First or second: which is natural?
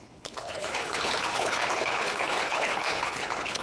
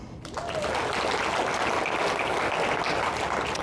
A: second